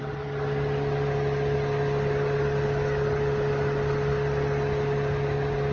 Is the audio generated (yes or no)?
no